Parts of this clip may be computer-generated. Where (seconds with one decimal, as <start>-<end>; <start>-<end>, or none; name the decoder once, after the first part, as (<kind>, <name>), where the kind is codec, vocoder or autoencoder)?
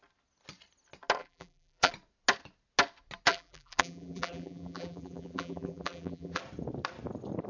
1.2-1.9 (vocoder, BigVGAN v2); 3.3-6.4